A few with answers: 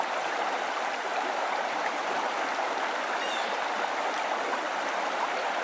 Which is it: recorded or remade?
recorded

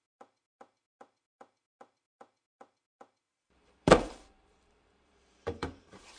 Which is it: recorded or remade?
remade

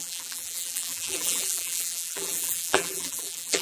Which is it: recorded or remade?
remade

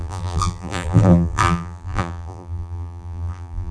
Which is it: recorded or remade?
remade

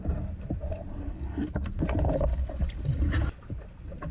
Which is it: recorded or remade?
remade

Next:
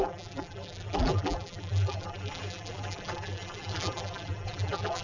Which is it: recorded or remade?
remade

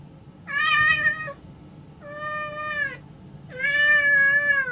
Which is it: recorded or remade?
recorded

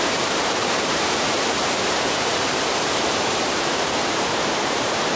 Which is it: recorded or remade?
remade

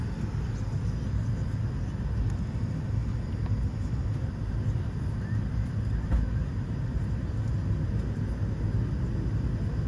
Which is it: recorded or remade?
recorded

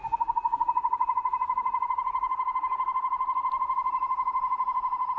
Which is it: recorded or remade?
recorded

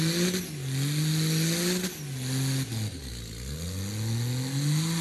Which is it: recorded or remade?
recorded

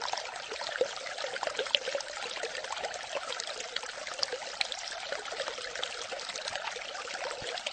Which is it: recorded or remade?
recorded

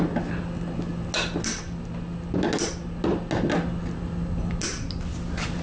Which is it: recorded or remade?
recorded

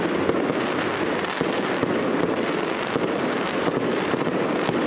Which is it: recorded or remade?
recorded